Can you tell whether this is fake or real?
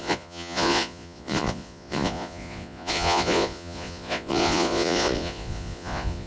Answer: fake